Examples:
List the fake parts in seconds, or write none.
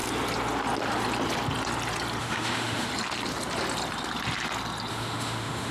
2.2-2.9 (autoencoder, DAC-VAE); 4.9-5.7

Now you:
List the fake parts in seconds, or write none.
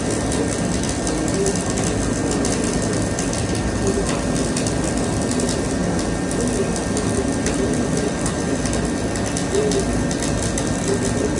none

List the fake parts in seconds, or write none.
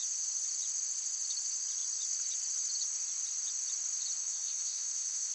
4.2-5.3 (codec, SNAC)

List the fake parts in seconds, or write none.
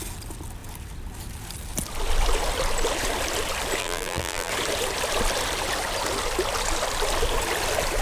3.8-4.5 (vocoder, BigVGAN v2)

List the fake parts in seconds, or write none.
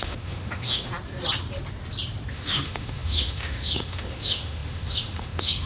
0.0-0.9 (autoencoder, DAC-VAE); 2.3-5.7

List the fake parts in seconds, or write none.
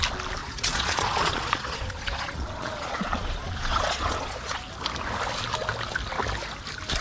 0.4-4.6 (vocoder, Vocos)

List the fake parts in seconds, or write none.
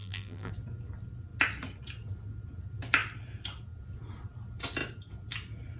0.0-0.5 (vocoder, BigVGAN v2)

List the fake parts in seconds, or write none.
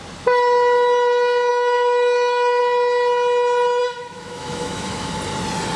1.5-2.6 (autoencoder, DAC-VAE); 3.8-5.1